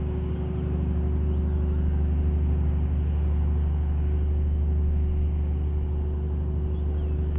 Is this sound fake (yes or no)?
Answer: no